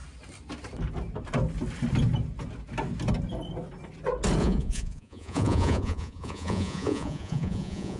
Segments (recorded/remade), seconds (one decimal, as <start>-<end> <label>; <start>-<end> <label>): 0.0-4.4 recorded; 4.4-8.0 remade